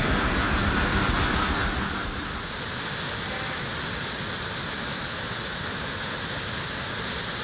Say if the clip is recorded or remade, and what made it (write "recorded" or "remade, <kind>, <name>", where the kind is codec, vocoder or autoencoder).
recorded